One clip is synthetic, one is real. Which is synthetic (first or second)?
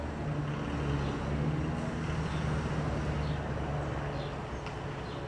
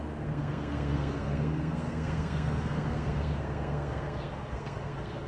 second